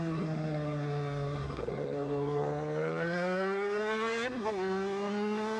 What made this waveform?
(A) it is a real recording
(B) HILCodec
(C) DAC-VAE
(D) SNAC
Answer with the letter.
D